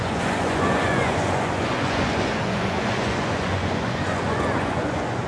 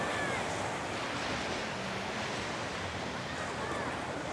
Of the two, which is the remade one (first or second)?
first